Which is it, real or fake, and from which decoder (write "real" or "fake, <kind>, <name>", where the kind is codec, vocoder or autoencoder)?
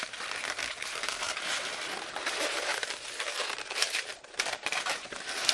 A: fake, vocoder, BigVGAN v2